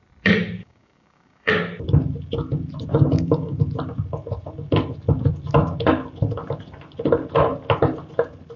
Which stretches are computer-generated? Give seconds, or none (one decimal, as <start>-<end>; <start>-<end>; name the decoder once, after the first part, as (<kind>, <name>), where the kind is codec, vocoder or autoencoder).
0.6-1.5 (codec, DAC); 2.9-3.6

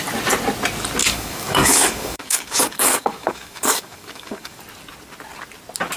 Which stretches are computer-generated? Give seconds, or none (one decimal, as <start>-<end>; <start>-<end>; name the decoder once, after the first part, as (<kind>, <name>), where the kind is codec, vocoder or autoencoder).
1.0-4.6 (codec, DAC)